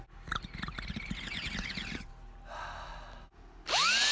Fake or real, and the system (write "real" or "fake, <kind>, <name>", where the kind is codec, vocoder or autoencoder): real